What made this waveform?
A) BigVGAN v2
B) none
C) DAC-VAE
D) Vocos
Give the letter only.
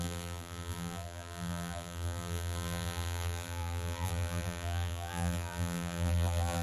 A